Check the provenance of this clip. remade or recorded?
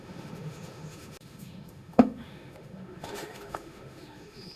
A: remade